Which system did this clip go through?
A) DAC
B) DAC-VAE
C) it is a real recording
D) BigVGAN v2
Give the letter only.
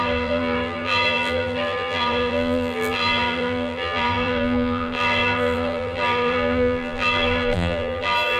D